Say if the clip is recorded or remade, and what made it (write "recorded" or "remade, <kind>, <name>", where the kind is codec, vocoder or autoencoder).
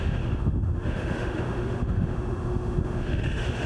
remade, autoencoder, DAC-VAE